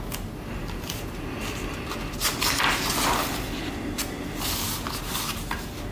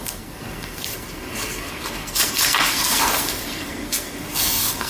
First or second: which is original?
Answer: first